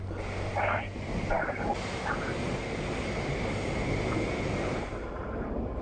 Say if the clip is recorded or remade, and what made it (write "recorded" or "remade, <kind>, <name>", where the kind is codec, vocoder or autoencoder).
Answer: recorded